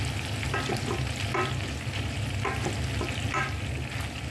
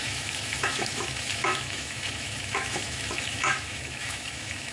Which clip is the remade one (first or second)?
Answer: second